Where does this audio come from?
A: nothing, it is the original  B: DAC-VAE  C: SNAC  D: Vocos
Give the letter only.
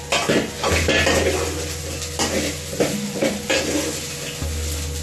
A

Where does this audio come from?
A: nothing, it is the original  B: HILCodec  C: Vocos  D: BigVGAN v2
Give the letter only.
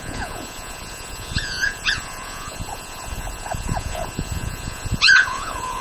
C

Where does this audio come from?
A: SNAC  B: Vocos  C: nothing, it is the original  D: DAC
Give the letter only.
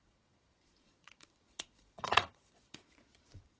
B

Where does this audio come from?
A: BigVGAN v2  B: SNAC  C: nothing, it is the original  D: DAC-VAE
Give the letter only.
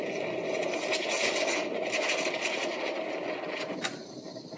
C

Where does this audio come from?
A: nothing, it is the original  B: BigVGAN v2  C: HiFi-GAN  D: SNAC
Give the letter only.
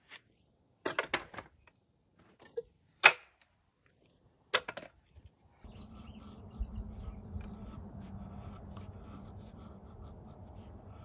A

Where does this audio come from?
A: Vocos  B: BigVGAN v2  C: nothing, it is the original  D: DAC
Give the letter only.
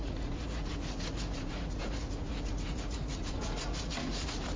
A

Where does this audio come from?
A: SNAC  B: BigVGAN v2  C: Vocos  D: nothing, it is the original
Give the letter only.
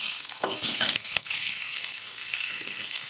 A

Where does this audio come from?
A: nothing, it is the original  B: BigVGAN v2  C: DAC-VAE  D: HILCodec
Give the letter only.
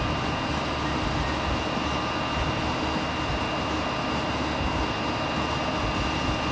A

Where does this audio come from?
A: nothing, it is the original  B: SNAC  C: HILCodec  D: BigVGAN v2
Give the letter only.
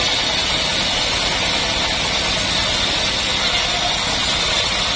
A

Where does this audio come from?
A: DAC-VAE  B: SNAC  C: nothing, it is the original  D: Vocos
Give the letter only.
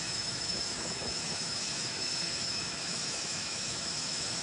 A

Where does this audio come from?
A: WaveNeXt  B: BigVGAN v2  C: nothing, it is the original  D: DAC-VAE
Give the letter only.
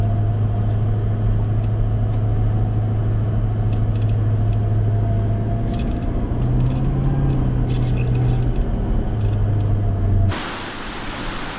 C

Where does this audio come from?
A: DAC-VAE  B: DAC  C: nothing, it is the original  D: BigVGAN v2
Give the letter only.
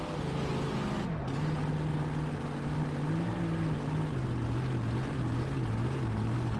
C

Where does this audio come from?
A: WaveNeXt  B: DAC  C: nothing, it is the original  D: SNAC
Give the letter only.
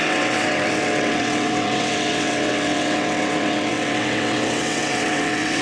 A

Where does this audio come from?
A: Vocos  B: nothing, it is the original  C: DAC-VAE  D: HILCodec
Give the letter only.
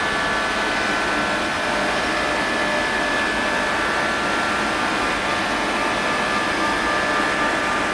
B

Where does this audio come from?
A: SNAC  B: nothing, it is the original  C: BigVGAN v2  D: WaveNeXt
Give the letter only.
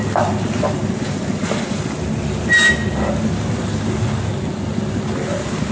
B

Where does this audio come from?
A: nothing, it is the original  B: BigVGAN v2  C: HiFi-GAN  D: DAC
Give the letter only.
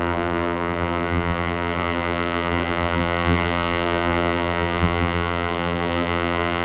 B